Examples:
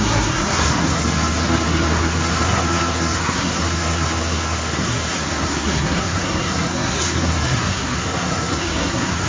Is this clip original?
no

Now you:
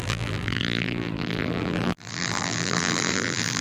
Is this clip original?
no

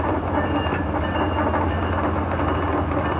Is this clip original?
yes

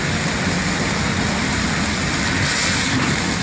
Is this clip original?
yes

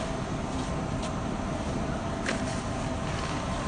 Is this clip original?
yes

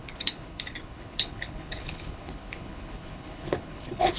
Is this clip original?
no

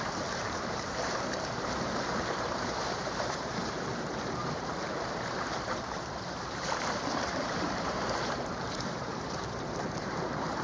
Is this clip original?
no